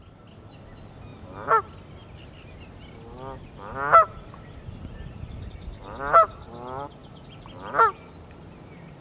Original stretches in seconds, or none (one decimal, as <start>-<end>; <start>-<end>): 0.0-9.0